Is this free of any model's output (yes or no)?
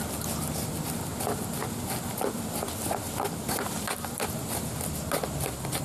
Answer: yes